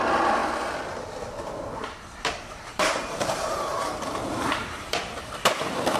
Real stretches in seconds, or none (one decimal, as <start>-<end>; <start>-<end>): 0.0-2.7; 5.0-6.0